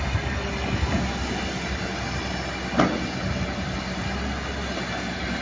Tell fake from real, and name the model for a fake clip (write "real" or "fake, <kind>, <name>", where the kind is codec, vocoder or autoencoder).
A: real